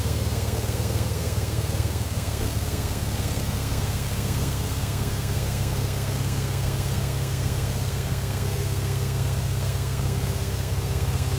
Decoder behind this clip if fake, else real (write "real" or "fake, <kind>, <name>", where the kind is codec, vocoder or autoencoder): fake, codec, SNAC